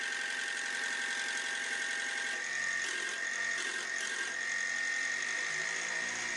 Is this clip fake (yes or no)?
no